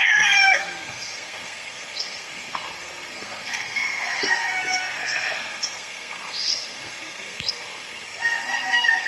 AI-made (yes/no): yes